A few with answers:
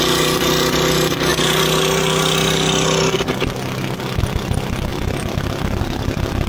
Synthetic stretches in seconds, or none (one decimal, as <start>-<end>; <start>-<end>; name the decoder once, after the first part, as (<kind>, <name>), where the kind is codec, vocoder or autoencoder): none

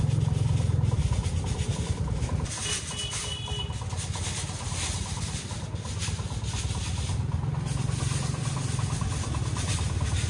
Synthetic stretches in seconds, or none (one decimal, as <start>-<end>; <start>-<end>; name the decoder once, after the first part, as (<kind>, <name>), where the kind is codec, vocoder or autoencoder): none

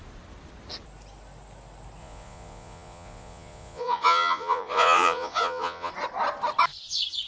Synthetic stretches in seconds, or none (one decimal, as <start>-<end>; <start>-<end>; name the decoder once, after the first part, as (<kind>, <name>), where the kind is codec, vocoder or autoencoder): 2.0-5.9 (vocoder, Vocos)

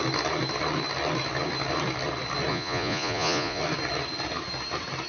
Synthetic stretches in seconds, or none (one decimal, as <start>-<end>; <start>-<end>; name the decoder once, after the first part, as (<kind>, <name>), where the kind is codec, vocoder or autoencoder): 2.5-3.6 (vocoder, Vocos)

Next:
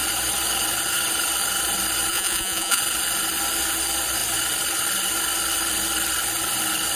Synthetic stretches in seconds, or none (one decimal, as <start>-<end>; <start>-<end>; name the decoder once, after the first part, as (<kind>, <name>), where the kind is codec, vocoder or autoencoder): 2.1-2.8 (vocoder, Vocos)

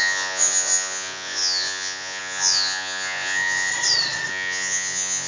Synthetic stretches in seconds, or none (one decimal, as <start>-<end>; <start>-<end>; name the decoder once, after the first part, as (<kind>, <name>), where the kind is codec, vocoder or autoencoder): 0.0-3.7 (vocoder, Vocos); 4.3-5.3

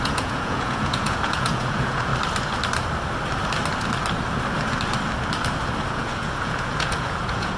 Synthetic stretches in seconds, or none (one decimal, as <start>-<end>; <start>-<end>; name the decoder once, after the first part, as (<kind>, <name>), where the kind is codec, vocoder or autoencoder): 0.0-2.1 (vocoder, Vocos); 5.9-7.6